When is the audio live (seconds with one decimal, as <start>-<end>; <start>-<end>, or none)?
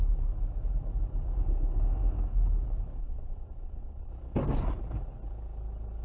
0.0-3.0; 4.1-6.0